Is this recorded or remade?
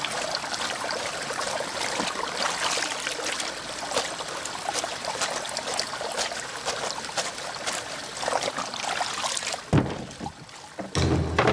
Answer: recorded